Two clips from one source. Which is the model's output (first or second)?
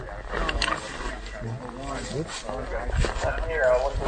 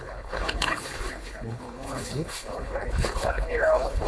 second